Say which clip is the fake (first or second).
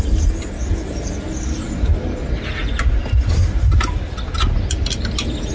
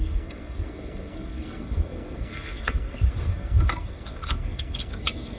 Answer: second